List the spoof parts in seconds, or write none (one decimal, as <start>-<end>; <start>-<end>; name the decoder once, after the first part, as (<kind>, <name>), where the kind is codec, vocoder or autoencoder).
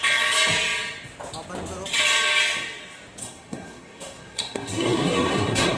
3.2-5.8 (codec, SNAC)